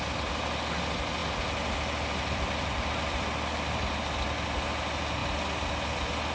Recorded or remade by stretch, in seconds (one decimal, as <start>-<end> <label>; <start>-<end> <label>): 0.0-6.3 recorded